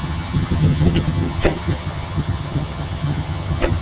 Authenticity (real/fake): fake